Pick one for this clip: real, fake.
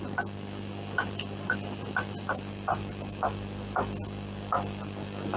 real